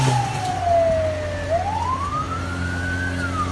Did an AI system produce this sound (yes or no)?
no